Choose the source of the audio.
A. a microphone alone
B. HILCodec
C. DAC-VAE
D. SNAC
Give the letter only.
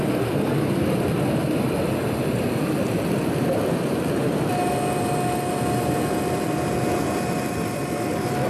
A